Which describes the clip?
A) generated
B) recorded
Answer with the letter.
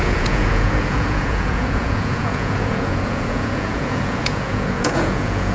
A